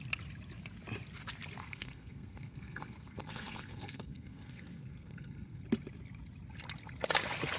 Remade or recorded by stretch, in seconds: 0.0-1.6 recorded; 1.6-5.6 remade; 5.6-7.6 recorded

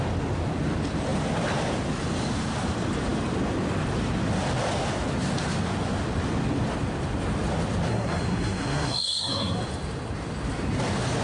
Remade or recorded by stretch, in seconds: 0.0-7.9 recorded; 7.9-9.6 remade; 9.6-11.2 recorded

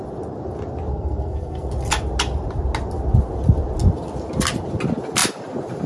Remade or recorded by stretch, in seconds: 0.0-0.9 recorded; 0.9-1.7 remade; 1.7-5.9 recorded

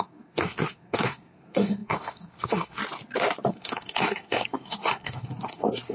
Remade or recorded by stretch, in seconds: 0.0-2.8 remade; 2.8-3.5 recorded; 3.5-5.9 remade